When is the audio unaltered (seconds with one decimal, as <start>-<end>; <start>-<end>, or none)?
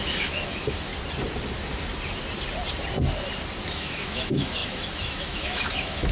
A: 0.9-3.7